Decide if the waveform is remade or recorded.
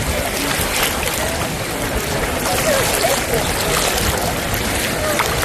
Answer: recorded